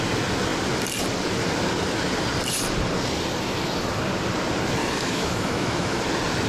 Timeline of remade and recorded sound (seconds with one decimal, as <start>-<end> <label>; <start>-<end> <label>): 0.0-4.8 recorded; 4.8-6.0 remade; 6.0-6.5 recorded